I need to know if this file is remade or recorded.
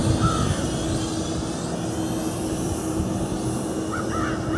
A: recorded